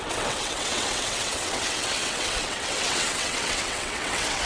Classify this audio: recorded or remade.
remade